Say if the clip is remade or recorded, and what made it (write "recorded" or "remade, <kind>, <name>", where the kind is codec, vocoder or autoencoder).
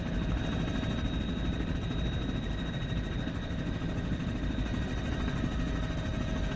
recorded